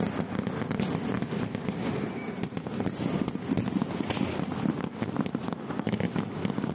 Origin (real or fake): real